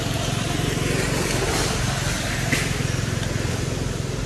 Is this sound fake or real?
real